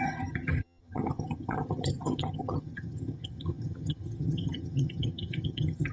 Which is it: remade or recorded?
remade